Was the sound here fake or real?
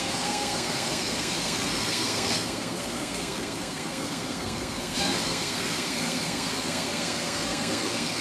fake